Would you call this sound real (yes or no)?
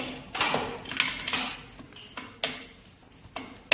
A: yes